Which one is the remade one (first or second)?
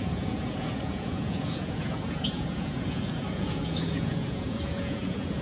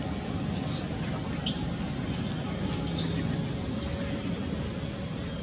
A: first